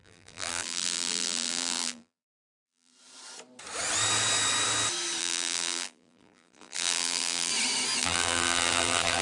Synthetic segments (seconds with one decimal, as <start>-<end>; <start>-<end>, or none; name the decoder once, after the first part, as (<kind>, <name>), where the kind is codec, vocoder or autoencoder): 0.0-2.9 (vocoder, BigVGAN v2); 5.2-7.5; 8.0-9.2